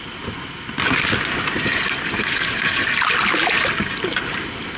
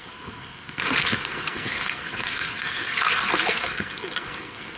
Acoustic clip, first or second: first